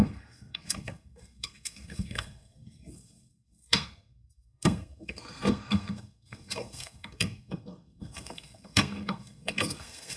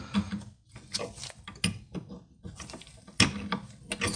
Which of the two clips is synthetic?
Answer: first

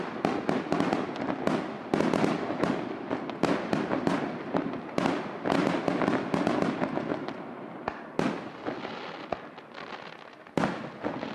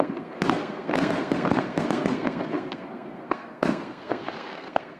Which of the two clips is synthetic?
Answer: second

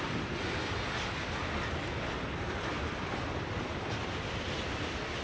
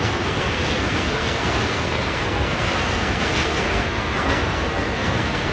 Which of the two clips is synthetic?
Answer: second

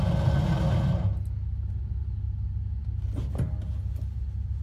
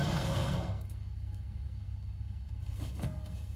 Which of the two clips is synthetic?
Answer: second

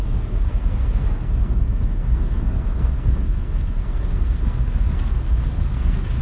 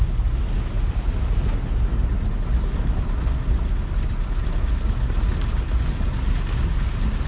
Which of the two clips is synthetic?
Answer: first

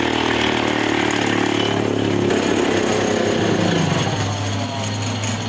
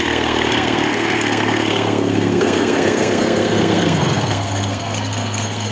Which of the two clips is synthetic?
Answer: second